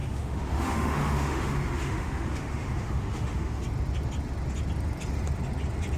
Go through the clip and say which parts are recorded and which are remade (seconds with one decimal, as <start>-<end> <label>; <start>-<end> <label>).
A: 0.0-3.6 remade; 3.6-6.0 recorded